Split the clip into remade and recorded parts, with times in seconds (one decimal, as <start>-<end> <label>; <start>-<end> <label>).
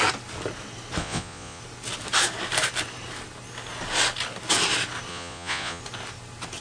0.0-1.0 recorded; 1.0-1.6 remade; 1.6-5.1 recorded; 5.1-5.8 remade; 5.8-6.6 recorded